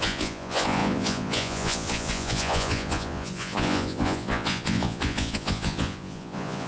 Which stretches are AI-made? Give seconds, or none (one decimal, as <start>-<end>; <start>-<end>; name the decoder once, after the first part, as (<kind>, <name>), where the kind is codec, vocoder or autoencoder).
0.0-6.7 (vocoder, Vocos)